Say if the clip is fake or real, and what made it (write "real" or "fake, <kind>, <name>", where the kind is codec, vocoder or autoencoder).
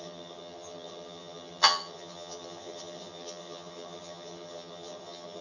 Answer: fake, vocoder, HiFi-GAN